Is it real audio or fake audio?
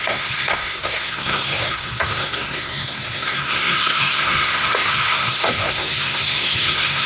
fake